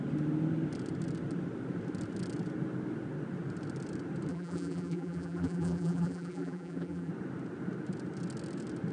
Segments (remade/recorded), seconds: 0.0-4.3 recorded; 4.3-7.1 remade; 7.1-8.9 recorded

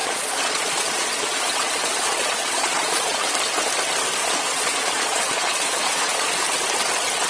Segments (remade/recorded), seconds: 0.0-3.3 remade; 3.3-4.2 recorded; 4.2-6.3 remade; 6.3-7.3 recorded

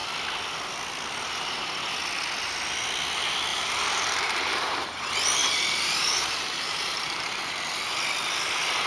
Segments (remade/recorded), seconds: 0.0-3.5 recorded; 3.5-4.9 remade; 4.9-5.4 recorded; 5.4-7.4 remade; 7.4-8.9 recorded

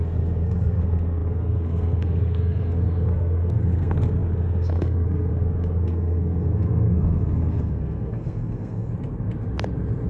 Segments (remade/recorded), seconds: 0.0-8.9 remade; 8.9-10.1 recorded